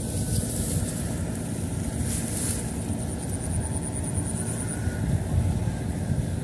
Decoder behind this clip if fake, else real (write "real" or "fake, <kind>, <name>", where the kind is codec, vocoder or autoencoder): real